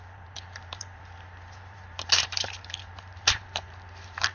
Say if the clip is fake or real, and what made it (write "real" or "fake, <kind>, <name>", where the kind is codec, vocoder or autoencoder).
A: fake, vocoder, BigVGAN v2